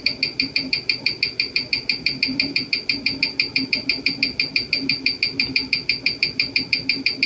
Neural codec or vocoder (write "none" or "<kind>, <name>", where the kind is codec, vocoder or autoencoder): none